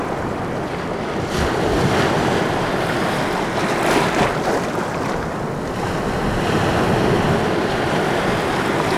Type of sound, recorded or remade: recorded